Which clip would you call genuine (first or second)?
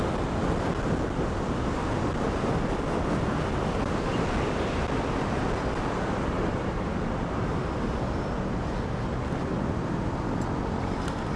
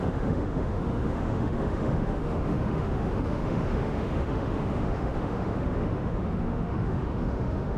first